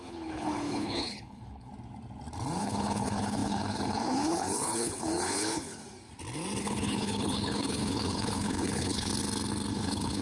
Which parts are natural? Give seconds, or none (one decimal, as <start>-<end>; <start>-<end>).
1.7-2.6; 5.8-6.6; 9.1-9.7